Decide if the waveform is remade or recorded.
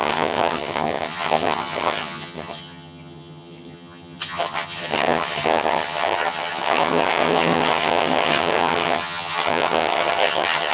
remade